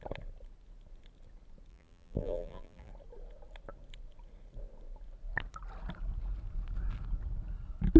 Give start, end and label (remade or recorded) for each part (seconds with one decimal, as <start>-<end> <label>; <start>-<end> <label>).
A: 0.0-1.7 recorded; 1.7-2.9 remade; 2.9-8.0 recorded